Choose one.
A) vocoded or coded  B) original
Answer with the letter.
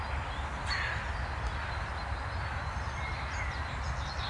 B